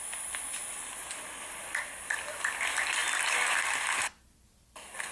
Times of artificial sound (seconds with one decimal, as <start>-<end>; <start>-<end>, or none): 0.6-2.5; 3.0-3.6